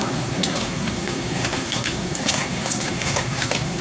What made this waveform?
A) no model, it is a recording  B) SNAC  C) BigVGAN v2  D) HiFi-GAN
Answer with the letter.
B